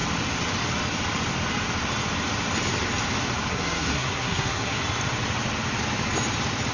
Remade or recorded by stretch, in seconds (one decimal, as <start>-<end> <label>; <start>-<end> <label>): 0.0-3.5 recorded; 3.5-4.8 remade; 4.8-6.7 recorded